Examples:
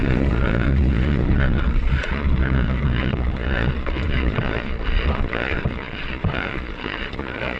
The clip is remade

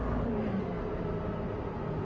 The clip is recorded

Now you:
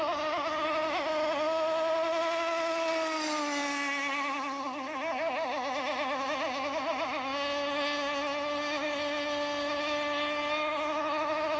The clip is recorded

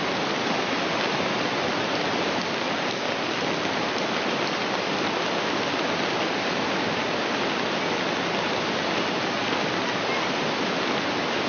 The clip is recorded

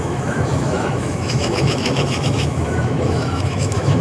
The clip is remade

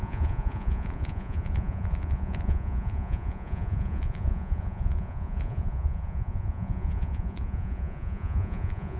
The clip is remade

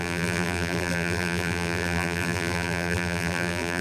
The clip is remade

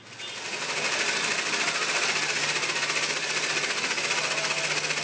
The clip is recorded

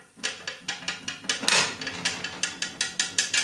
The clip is recorded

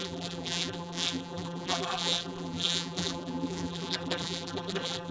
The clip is remade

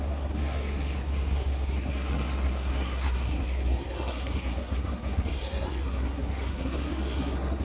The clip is remade